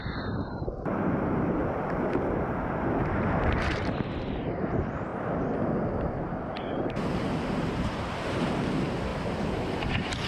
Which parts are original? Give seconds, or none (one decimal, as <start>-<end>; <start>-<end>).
0.0-0.7; 1.6-2.8; 5.1-6.2